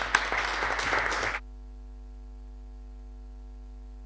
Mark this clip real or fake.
real